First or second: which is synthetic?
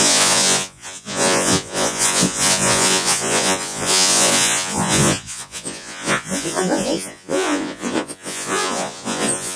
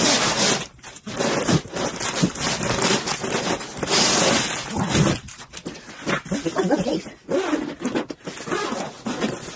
first